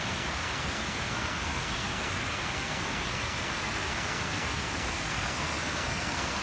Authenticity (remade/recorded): remade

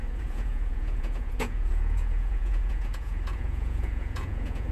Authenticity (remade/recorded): remade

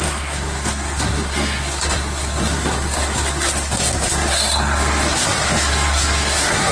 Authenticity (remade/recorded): remade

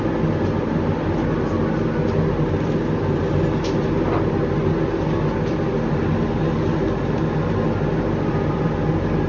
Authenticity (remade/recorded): recorded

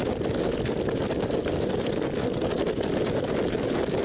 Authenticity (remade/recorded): recorded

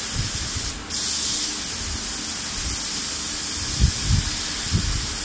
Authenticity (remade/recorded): recorded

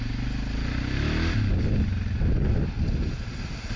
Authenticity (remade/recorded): recorded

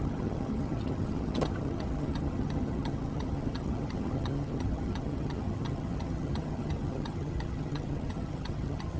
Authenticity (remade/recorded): remade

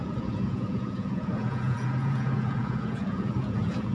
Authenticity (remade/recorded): remade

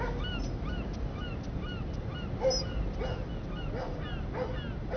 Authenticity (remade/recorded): recorded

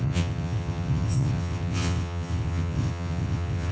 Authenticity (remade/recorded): remade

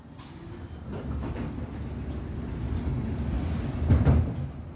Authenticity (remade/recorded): recorded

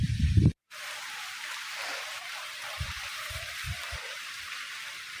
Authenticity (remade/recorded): remade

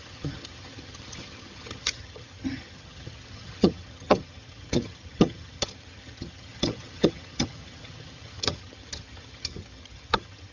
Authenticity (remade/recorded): remade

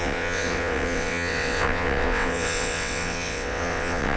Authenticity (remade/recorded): remade